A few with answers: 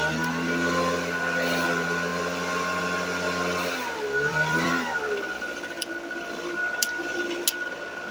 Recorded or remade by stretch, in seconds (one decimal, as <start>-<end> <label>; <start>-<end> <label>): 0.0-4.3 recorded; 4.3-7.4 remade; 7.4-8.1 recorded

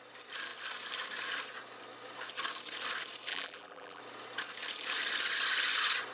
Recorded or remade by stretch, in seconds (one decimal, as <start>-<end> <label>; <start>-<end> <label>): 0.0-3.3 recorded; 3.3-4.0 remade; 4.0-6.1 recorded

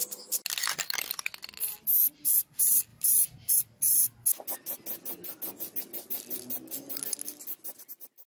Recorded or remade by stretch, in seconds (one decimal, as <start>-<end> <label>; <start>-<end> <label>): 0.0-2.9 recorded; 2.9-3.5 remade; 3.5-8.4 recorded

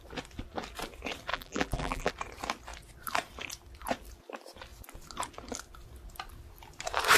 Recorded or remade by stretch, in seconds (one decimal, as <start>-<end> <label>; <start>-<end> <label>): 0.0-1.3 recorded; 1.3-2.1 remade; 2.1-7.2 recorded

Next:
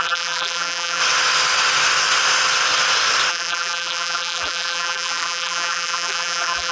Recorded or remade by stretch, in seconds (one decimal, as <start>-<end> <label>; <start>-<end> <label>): 0.0-1.0 remade; 1.0-3.3 recorded; 3.3-6.7 remade